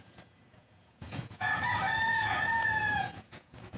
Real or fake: fake